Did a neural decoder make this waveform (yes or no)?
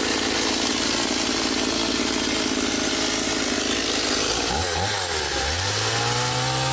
no